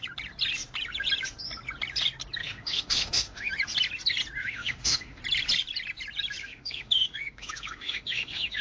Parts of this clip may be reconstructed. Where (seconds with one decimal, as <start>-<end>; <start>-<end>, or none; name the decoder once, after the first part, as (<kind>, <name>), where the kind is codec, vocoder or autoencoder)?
2.4-3.5 (autoencoder, DAC-VAE); 4.4-5.2; 6.4-8.6